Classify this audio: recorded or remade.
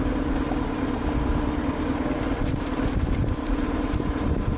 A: recorded